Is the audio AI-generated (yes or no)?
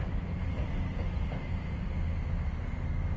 no